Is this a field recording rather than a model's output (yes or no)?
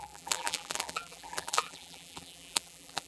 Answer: no